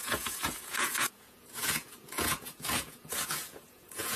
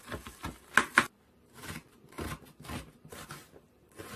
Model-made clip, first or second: first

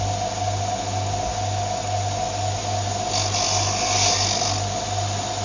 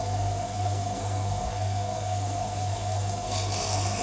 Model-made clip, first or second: second